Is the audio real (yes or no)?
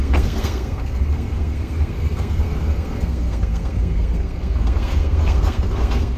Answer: no